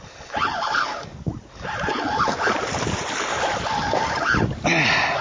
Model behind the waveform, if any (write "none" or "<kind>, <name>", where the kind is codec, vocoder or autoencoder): none